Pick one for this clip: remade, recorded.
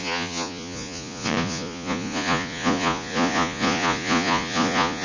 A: remade